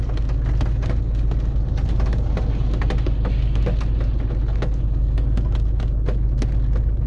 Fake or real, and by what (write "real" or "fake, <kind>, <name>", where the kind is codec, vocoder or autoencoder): real